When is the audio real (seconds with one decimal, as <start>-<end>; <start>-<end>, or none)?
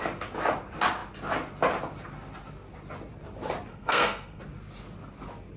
0.0-3.7; 4.4-5.6